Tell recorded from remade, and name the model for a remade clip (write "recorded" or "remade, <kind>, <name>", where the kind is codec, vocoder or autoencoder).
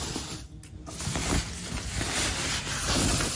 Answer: recorded